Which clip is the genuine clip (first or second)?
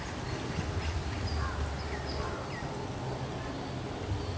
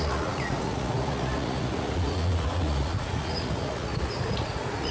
first